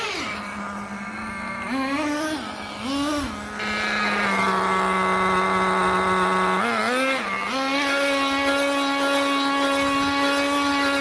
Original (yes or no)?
yes